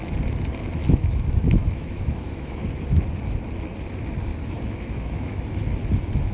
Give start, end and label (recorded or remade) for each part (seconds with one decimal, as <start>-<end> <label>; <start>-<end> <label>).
0.0-1.6 recorded; 1.6-2.6 remade; 2.6-4.3 recorded; 4.3-5.4 remade; 5.4-6.3 recorded